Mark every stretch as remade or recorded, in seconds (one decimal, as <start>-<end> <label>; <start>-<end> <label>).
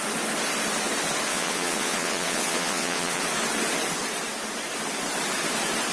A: 0.0-1.3 recorded; 1.3-3.2 remade; 3.2-5.9 recorded